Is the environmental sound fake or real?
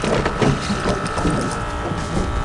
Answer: real